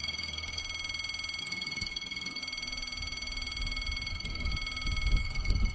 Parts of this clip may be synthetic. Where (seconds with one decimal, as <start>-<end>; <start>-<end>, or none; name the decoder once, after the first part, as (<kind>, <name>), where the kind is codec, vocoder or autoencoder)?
0.0-0.6 (codec, SNAC); 1.4-2.4; 4.1-4.5; 5.2-5.7